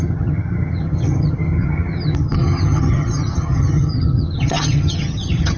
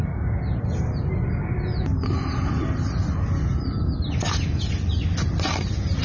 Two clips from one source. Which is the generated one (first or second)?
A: first